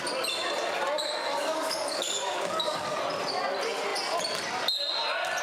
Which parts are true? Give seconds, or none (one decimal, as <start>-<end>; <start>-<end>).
0.0-1.2; 3.0-5.4